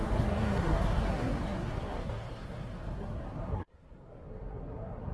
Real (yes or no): no